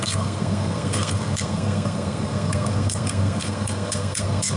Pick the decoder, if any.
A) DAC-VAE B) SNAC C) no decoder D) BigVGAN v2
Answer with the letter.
B